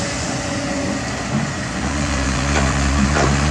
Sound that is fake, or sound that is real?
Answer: fake